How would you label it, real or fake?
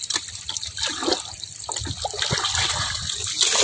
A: real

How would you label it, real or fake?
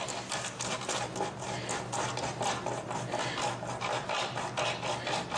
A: real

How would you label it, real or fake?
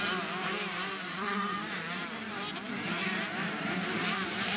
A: fake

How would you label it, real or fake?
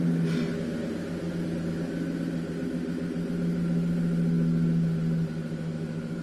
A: real